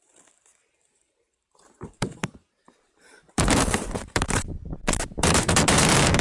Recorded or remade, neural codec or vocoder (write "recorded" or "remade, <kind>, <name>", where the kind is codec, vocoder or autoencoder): remade, vocoder, BigVGAN v2